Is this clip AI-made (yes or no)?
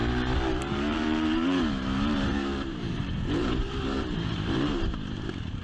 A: yes